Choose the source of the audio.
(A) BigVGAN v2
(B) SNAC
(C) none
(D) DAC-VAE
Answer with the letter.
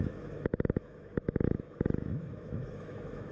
D